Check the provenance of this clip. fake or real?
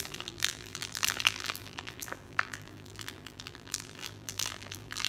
fake